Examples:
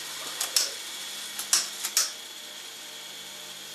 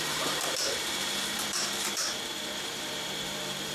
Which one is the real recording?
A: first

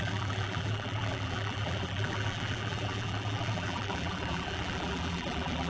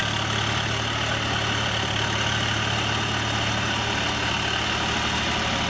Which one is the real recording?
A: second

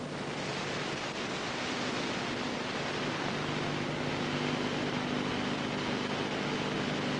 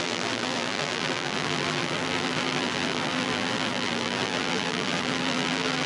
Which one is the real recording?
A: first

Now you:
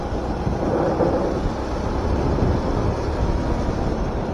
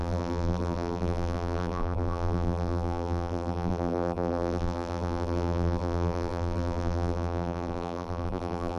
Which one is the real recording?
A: first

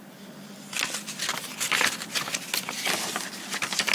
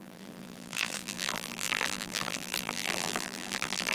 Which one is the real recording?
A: first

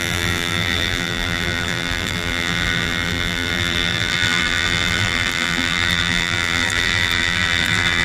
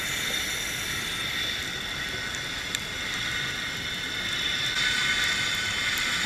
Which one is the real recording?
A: second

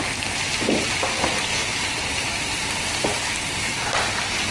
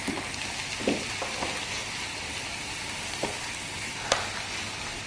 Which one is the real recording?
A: second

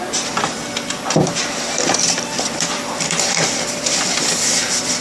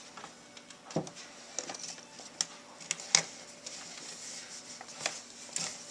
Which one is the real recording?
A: second